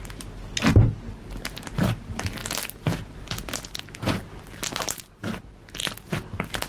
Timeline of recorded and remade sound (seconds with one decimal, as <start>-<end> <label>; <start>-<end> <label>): 0.0-6.7 recorded